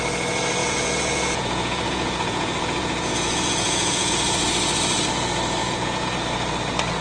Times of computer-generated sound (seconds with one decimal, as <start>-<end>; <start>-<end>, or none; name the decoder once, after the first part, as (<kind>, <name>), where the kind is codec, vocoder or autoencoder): 0.6-4.1 (vocoder, Vocos); 5.6-6.1